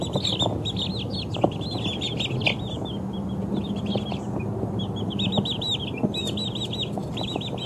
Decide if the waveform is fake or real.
real